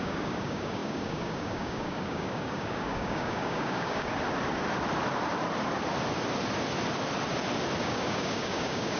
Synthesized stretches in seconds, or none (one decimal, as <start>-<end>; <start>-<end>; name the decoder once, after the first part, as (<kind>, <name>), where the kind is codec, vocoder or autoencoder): 0.0-4.1 (codec, DAC); 7.8-9.0